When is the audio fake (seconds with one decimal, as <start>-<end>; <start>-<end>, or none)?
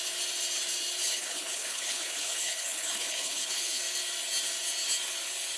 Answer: 1.0-3.8